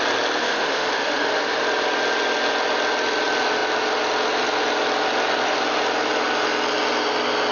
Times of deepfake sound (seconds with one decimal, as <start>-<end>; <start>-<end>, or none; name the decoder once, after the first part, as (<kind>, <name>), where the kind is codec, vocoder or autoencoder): 0.4-1.6 (autoencoder, DAC-VAE)